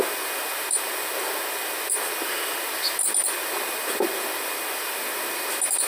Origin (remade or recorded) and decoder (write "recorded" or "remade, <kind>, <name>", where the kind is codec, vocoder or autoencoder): remade, vocoder, BigVGAN v2